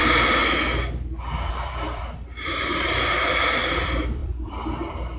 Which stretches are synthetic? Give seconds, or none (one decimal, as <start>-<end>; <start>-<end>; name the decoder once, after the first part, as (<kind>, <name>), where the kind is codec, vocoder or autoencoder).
0.0-0.4 (vocoder, BigVGAN v2); 1.5-2.7; 3.3-5.2